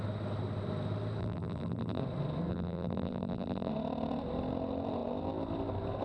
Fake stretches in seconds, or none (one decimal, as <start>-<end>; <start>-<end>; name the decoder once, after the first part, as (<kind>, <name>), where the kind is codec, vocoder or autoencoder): 1.2-2.0 (vocoder, BigVGAN v2); 2.5-3.7